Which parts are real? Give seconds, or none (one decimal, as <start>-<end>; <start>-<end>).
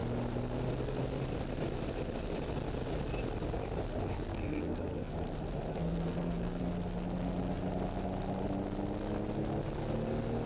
0.0-4.3; 5.1-5.7; 6.6-10.5